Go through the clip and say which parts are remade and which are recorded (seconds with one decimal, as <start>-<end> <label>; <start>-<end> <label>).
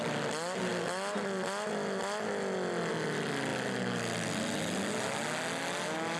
0.0-6.2 recorded